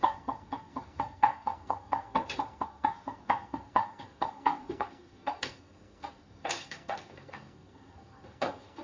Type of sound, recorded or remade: remade